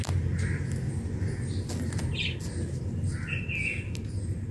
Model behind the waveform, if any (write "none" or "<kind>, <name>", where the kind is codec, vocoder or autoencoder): none